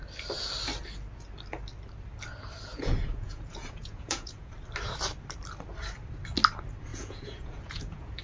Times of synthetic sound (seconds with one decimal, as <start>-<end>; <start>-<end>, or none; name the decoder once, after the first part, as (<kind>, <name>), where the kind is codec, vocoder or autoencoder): 2.7-4.5 (vocoder, Vocos); 6.9-8.2